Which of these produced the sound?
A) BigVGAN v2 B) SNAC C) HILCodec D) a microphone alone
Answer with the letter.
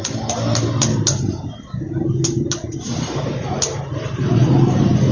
D